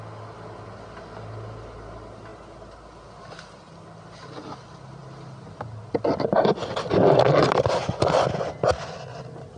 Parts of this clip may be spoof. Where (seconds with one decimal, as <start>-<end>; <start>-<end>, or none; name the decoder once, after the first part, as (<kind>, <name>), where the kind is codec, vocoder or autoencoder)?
none